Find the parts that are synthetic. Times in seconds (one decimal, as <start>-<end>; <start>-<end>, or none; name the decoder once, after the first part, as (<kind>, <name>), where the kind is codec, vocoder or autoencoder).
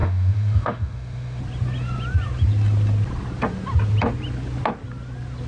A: 0.0-1.4 (autoencoder, DAC-VAE)